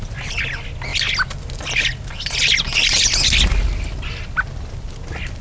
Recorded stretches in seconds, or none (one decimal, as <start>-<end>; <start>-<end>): 0.0-5.4